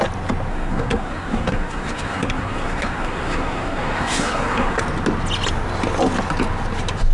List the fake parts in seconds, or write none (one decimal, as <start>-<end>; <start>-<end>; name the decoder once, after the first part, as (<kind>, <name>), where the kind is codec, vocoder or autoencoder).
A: 0.5-4.8 (codec, SNAC)